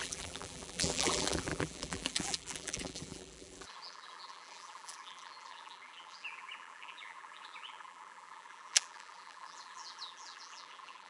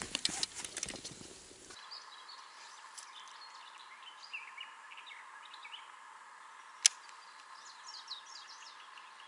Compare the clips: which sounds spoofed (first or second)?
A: first